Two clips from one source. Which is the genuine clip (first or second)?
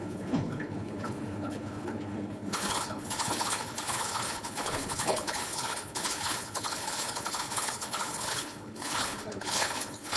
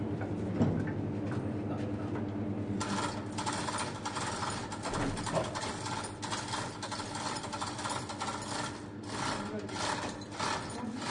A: second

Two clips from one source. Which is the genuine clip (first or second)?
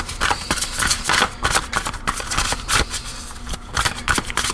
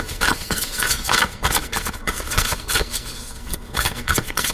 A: first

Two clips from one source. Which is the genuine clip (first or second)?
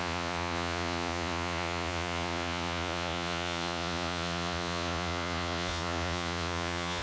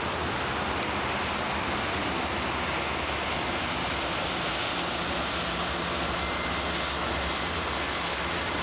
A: second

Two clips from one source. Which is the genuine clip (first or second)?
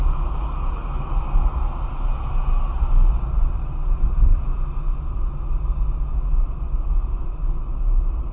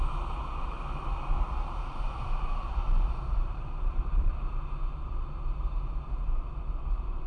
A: first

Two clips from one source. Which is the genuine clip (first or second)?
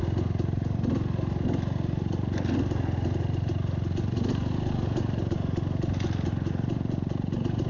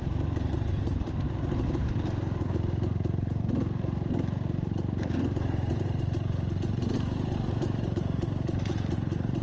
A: first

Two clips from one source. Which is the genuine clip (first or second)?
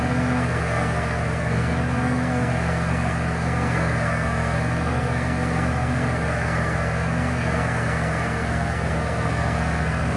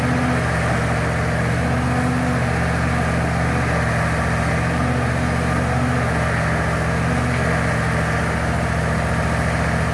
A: second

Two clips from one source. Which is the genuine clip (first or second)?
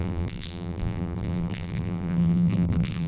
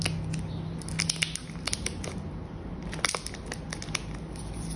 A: second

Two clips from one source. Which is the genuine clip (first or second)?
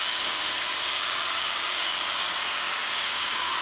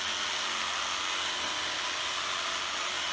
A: second